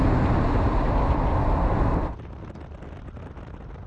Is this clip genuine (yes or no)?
yes